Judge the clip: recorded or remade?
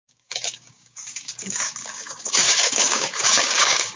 remade